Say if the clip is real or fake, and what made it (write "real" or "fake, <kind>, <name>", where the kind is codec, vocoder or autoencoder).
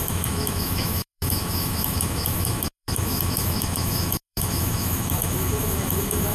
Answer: fake, autoencoder, DAC-VAE